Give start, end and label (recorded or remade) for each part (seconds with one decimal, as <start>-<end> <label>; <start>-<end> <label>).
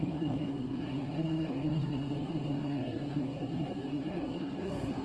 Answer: 0.0-5.0 remade